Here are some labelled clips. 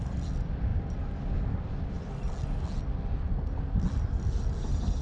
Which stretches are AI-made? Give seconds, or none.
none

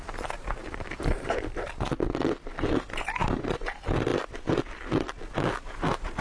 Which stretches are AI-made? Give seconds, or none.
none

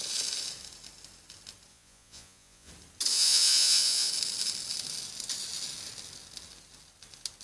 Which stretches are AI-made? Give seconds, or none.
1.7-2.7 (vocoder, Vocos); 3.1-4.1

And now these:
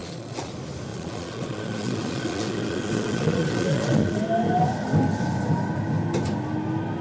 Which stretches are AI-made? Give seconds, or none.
0.0-0.5 (vocoder, Vocos); 0.9-4.2

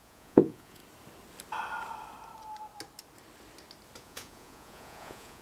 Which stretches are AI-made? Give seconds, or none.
0.0-0.8 (vocoder, Vocos); 4.0-5.4